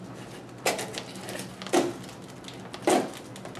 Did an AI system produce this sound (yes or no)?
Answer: no